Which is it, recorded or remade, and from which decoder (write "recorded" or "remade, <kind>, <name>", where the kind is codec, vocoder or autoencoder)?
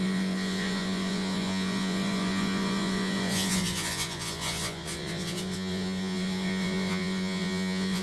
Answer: remade, vocoder, Vocos